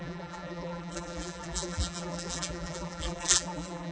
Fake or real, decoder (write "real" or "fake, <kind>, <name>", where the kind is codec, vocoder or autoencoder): fake, vocoder, BigVGAN v2